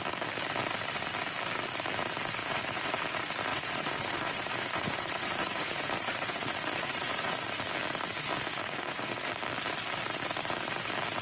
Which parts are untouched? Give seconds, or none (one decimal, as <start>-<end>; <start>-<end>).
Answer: 0.0-2.4; 2.9-3.5; 7.6-8.5; 9.3-11.2